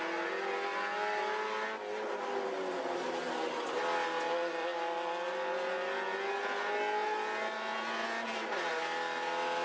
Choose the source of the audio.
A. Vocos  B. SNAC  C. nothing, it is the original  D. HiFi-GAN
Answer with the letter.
C